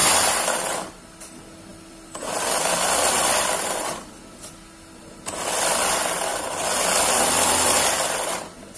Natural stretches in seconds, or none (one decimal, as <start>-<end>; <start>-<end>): 1.0-1.7; 4.2-8.8